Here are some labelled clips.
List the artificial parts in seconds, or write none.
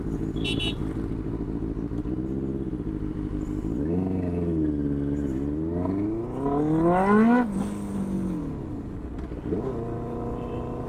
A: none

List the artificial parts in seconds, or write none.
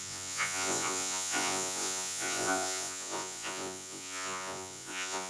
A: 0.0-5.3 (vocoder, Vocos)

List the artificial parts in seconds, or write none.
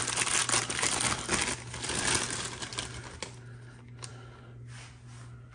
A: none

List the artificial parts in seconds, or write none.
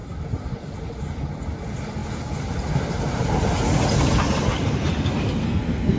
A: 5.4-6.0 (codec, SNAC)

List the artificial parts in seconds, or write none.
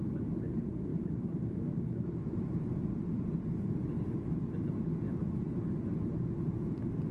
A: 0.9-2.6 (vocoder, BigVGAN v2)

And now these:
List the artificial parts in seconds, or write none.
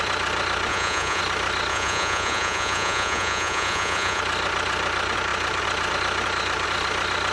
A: 0.7-1.2 (vocoder, Vocos); 1.7-4.2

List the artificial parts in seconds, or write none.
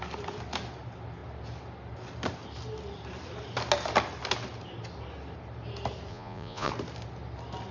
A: 6.1-6.7 (vocoder, Vocos)